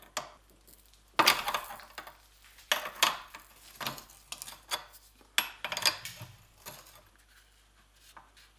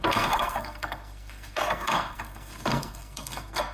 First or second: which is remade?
second